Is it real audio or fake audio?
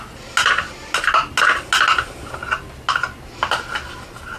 real